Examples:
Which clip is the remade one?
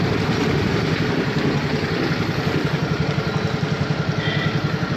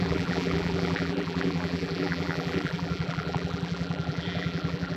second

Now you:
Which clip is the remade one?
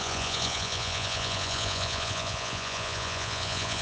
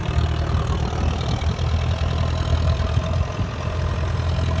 first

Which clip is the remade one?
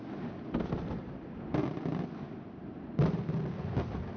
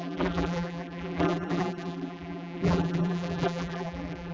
second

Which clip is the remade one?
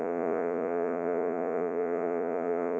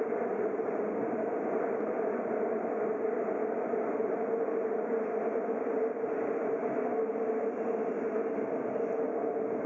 first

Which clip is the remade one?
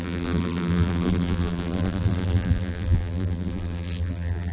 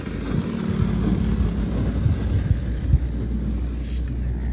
first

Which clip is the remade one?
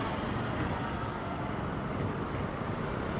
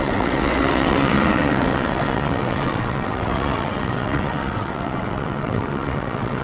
second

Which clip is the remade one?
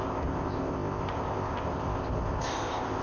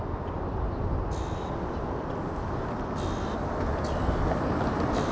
first